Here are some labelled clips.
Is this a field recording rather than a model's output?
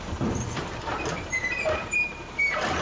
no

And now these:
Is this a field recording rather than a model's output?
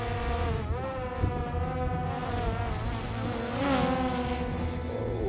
yes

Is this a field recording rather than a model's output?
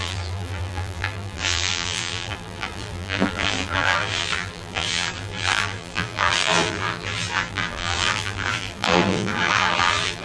no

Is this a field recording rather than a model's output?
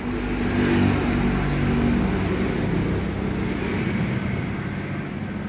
yes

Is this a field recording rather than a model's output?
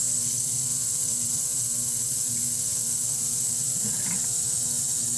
no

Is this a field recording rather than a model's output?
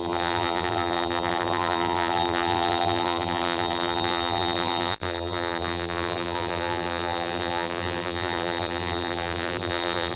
no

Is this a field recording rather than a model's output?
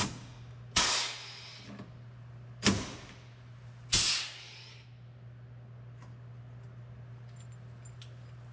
yes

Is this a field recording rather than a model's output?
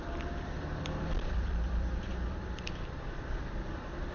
no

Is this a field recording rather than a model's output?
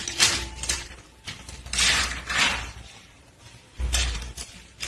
no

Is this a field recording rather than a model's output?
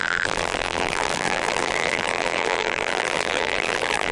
no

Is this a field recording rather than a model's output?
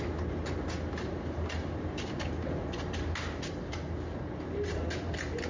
yes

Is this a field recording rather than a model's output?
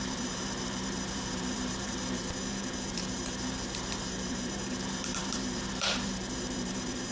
no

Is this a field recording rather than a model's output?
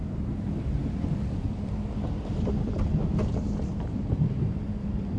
no